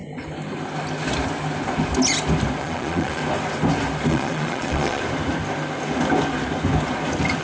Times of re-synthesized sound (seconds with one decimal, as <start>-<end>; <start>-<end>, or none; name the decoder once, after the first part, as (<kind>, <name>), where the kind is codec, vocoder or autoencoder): 2.6-3.2 (vocoder, Vocos); 4.1-5.0